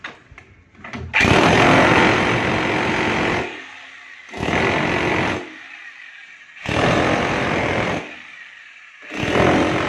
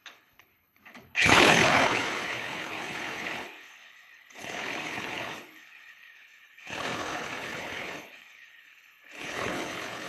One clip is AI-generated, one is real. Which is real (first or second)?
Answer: first